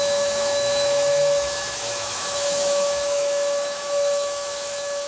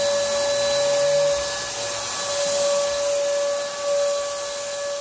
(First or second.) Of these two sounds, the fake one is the first